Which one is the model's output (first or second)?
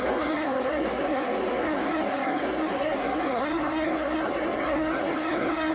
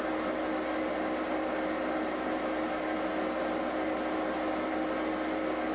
first